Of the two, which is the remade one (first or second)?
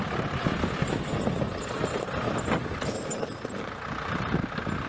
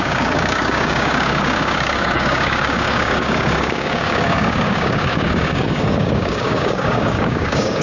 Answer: second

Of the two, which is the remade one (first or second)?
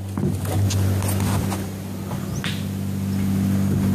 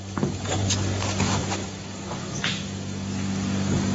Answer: second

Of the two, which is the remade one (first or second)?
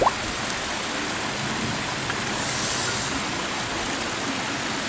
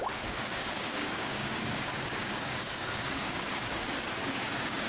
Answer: second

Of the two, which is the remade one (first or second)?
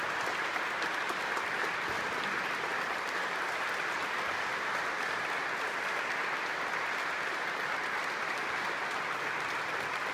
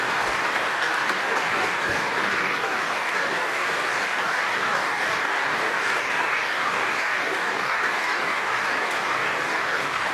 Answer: second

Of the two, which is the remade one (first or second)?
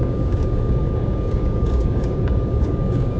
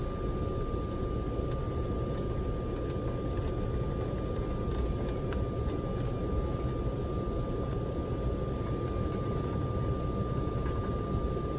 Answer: first